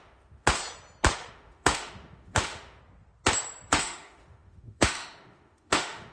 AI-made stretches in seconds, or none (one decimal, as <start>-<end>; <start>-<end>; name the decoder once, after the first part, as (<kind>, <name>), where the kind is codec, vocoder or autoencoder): 0.0-0.6 (autoencoder, DAC-VAE); 1.3-2.8; 3.7-6.1